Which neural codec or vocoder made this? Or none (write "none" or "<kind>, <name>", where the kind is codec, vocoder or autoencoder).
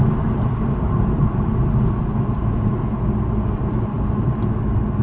none